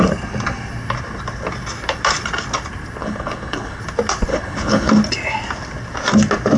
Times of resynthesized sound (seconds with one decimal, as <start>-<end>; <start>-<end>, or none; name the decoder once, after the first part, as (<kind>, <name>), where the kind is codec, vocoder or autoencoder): 3.0-3.8 (codec, HILCodec); 4.3-4.9